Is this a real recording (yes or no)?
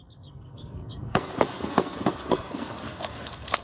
no